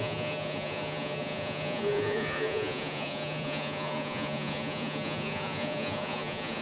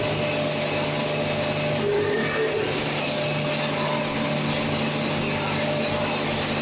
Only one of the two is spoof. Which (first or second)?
first